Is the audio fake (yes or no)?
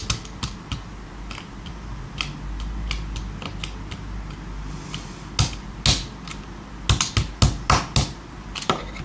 no